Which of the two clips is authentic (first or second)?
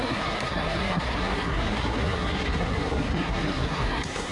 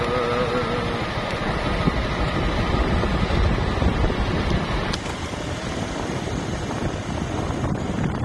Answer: second